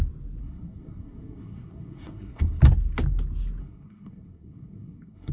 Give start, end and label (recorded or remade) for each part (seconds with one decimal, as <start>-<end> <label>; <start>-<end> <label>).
0.0-0.4 recorded; 0.4-2.6 remade; 2.6-3.6 recorded; 3.6-5.3 remade